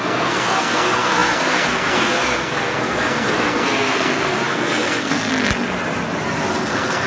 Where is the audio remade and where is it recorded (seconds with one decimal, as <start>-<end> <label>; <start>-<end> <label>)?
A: 0.0-5.3 remade; 5.3-6.5 recorded; 6.5-7.1 remade